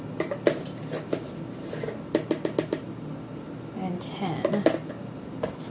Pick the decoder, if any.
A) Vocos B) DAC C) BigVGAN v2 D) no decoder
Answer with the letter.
D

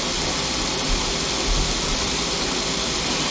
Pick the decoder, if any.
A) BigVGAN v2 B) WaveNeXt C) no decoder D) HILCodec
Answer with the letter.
C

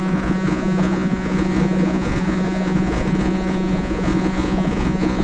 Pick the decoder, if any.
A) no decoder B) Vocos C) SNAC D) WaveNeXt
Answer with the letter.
B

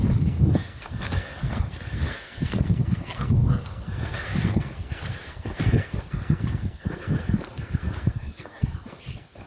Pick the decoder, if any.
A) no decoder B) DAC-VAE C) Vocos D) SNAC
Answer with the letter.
D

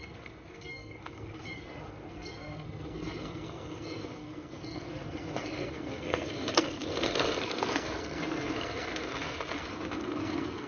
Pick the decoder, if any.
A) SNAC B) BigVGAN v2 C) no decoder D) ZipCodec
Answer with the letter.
A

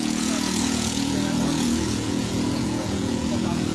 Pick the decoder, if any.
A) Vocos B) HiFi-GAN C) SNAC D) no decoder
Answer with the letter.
A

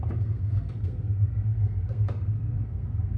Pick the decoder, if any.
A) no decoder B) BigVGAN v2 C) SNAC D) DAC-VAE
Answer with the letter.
C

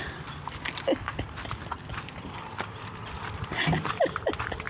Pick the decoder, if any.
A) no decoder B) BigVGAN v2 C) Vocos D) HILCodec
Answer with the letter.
B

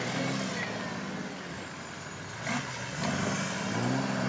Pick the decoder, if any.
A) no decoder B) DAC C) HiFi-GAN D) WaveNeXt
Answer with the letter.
A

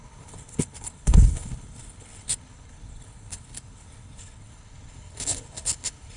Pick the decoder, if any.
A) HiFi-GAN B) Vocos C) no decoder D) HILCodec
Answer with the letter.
D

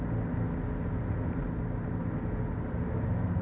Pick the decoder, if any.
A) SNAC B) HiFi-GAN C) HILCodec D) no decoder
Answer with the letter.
D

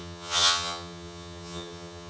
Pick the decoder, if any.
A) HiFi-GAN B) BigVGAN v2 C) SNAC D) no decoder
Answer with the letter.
A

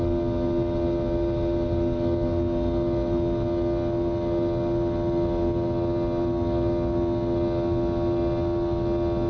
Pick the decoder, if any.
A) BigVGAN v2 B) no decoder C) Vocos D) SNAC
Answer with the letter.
B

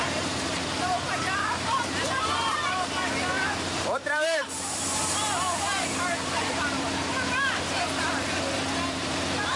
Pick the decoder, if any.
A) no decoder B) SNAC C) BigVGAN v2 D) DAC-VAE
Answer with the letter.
C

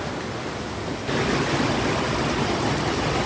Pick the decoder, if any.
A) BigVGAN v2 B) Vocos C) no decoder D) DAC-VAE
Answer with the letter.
C